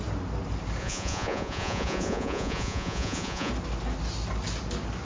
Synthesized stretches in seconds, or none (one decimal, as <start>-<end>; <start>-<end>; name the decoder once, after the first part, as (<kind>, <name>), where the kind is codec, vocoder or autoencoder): 0.8-3.5 (vocoder, Vocos)